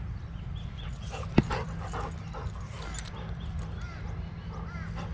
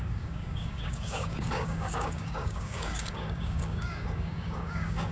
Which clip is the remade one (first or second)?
second